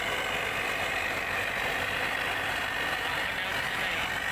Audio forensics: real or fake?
real